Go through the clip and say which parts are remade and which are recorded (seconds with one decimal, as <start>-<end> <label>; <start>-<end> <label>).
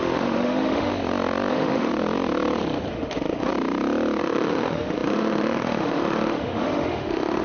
0.0-0.9 remade; 0.9-1.5 recorded; 1.5-1.9 remade; 1.9-2.9 recorded; 2.9-3.5 remade; 3.5-4.2 recorded; 4.2-7.4 remade